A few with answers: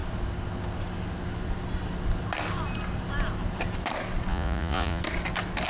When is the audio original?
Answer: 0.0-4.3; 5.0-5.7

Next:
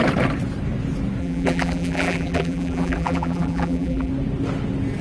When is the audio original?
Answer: 0.0-1.2; 4.1-5.0

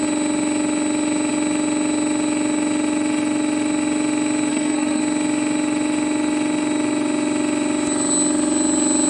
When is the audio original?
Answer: 0.0-4.5; 5.0-9.1